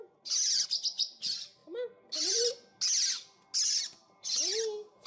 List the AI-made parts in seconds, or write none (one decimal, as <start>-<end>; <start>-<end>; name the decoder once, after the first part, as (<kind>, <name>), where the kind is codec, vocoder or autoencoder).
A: none